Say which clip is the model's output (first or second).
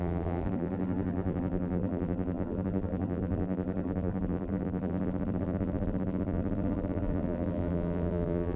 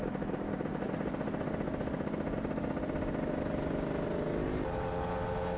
first